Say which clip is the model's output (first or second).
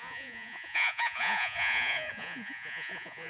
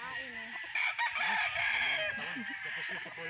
first